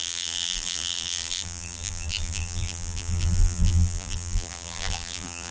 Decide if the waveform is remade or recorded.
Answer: remade